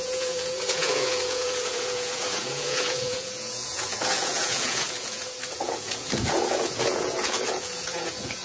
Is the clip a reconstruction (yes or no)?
yes